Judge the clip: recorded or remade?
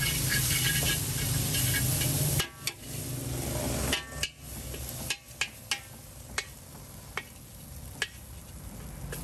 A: recorded